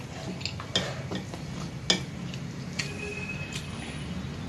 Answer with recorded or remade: recorded